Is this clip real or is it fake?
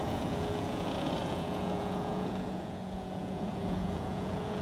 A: fake